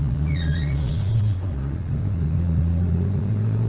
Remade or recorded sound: remade